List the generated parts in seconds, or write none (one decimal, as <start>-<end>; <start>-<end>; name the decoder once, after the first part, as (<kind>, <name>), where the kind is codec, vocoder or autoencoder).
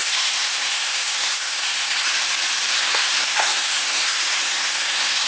0.0-2.1 (codec, SNAC); 2.7-5.3